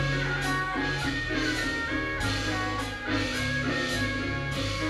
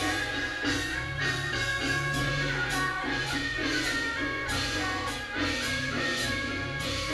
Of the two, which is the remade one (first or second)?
second